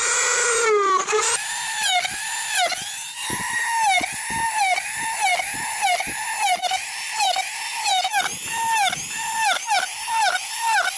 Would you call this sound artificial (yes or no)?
no